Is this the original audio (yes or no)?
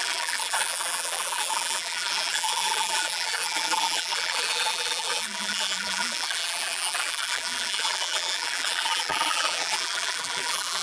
no